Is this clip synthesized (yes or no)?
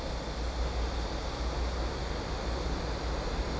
no